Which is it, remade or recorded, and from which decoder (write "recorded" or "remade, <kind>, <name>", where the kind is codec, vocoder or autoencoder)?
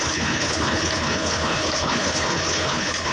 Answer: remade, codec, HILCodec